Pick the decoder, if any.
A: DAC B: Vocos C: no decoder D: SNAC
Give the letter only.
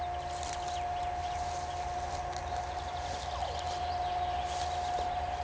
C